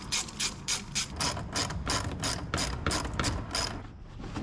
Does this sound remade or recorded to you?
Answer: recorded